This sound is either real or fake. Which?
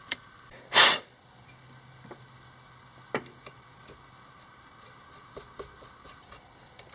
real